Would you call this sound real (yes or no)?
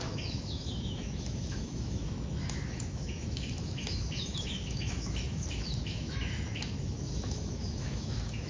no